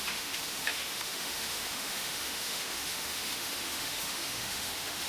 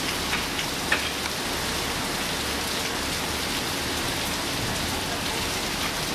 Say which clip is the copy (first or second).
first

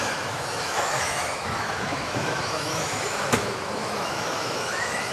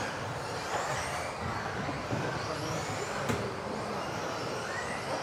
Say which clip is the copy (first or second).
first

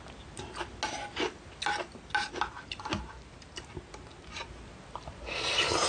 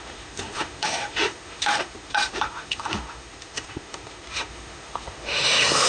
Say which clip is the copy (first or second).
second